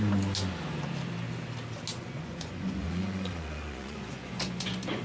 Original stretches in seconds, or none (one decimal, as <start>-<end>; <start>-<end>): 0.0-1.9